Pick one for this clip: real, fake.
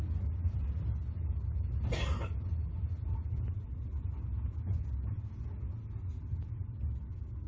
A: real